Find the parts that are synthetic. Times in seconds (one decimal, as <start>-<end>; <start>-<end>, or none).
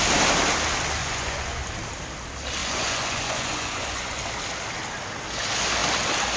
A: 1.0-1.6; 2.6-4.3